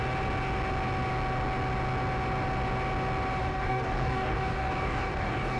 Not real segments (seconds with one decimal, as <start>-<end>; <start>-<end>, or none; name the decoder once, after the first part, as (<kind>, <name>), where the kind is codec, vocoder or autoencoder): 3.4-5.6 (codec, DAC)